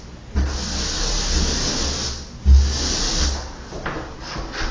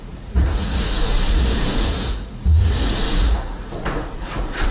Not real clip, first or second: second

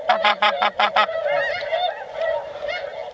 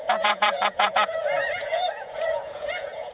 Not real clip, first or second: second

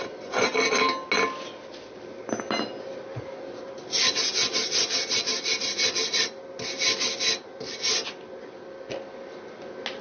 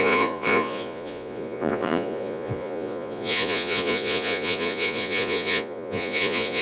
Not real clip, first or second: second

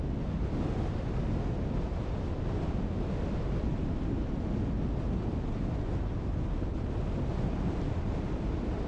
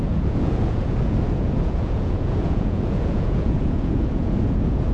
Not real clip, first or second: second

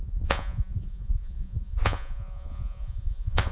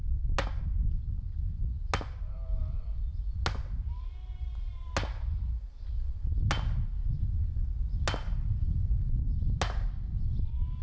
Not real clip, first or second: first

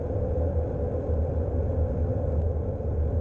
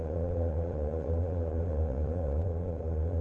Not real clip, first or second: second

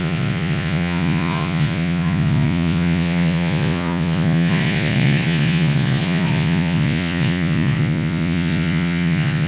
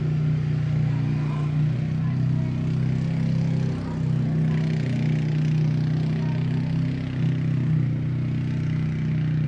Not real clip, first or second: first